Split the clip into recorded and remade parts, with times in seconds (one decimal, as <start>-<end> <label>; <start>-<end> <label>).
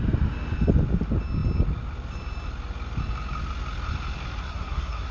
0.0-4.4 recorded; 4.4-5.1 remade